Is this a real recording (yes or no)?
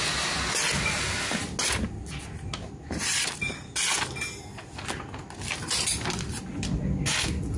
yes